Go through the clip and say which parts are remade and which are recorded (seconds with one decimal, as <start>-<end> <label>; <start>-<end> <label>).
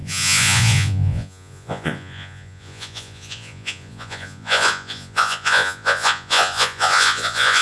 0.0-7.6 remade